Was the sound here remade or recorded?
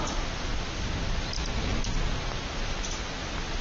recorded